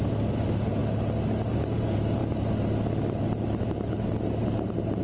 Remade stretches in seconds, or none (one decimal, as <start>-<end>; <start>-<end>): 0.0-0.8; 1.5-2.2; 3.6-5.0